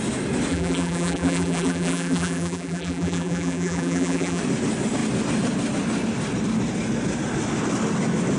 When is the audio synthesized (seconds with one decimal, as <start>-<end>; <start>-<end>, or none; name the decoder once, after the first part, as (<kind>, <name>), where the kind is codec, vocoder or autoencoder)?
0.5-4.4 (vocoder, BigVGAN v2)